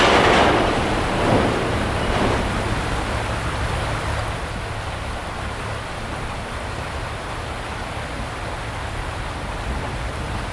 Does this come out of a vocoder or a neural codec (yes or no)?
no